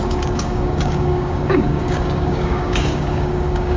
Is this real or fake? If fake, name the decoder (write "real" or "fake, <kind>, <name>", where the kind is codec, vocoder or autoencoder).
fake, codec, DAC